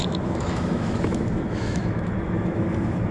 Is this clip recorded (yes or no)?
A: no